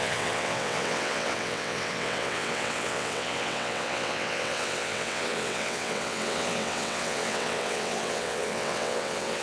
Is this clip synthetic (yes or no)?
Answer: yes